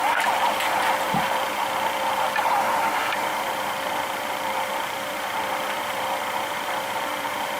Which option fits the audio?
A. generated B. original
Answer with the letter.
A